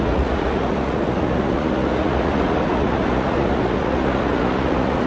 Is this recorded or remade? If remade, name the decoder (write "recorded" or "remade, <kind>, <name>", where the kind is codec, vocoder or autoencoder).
remade, vocoder, Vocos